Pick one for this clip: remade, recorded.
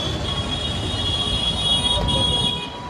recorded